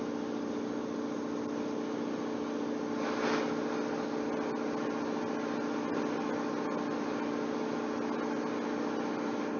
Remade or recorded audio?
recorded